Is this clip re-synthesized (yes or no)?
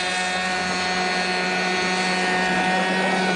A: no